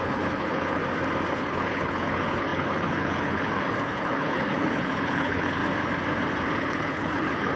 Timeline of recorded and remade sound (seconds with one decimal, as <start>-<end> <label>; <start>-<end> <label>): 0.0-0.8 remade; 0.8-1.3 recorded; 1.3-5.6 remade; 5.6-6.6 recorded; 6.6-7.6 remade